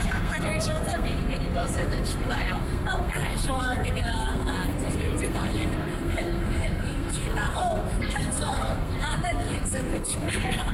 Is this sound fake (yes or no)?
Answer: yes